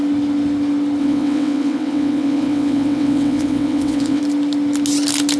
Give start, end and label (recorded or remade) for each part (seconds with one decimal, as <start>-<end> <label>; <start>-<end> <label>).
0.0-1.0 recorded; 1.0-4.2 remade; 4.2-5.4 recorded